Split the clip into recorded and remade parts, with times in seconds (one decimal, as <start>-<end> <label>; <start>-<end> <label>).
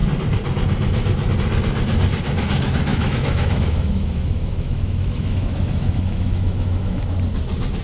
0.0-2.9 recorded; 2.9-7.0 remade; 7.0-7.8 recorded